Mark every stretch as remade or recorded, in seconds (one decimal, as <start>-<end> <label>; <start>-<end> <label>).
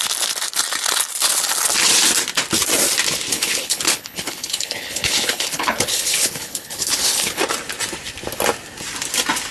0.0-3.3 recorded; 3.3-7.4 remade; 7.4-9.5 recorded